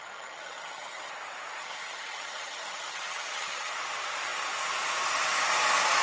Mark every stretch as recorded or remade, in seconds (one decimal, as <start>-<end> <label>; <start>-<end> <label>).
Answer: 0.0-1.1 remade; 1.1-1.6 recorded; 1.6-3.7 remade; 3.7-6.0 recorded